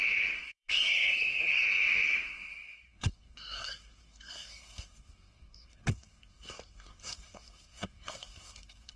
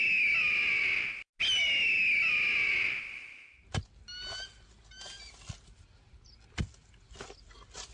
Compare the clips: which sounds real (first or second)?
second